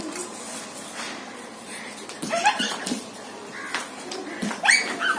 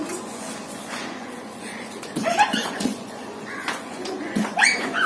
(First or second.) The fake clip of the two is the second